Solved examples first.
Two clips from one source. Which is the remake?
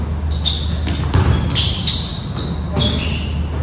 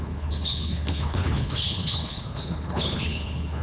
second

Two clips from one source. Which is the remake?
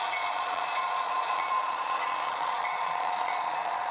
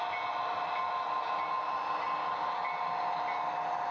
first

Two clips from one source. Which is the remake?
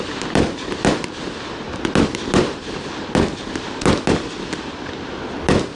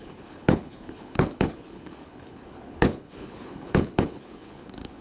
second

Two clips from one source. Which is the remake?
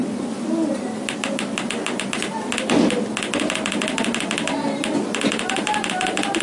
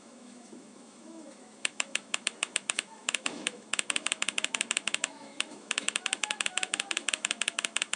second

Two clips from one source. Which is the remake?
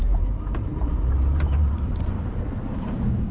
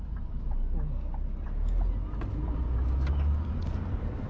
first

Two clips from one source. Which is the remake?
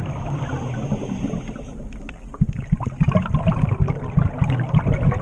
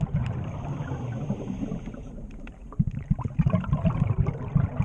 second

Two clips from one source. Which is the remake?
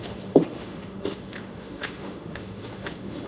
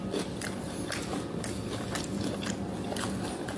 first